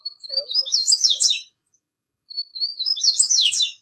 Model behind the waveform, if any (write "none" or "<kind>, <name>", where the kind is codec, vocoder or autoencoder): codec, DAC